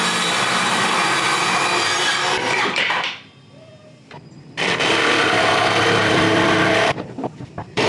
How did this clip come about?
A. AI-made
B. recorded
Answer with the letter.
A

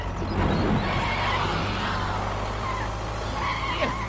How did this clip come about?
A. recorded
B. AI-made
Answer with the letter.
A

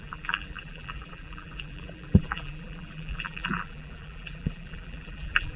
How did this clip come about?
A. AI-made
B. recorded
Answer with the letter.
A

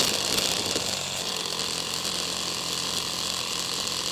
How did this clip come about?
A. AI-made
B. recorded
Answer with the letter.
B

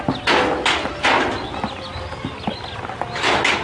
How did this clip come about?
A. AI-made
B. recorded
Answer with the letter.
B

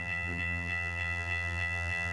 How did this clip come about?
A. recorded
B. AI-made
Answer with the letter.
B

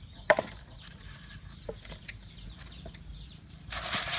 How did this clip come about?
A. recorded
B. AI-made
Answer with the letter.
B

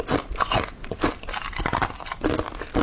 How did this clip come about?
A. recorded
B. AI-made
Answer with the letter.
A